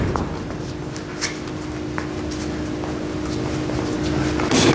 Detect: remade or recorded recorded